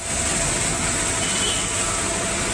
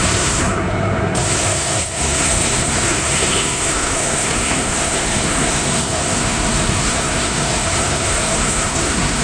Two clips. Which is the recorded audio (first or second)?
first